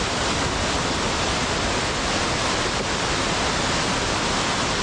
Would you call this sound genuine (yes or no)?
yes